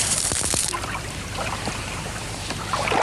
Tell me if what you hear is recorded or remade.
remade